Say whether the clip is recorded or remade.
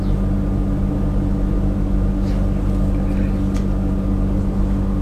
recorded